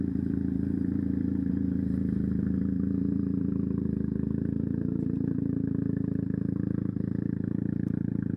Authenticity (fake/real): fake